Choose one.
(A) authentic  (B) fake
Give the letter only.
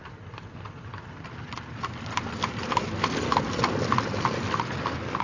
A